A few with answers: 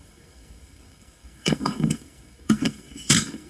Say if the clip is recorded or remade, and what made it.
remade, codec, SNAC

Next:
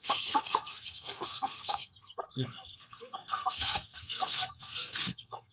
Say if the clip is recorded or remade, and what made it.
remade, codec, SNAC